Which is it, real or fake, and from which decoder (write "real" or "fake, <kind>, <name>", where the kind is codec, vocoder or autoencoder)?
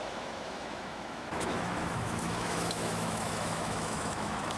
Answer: fake, autoencoder, DAC-VAE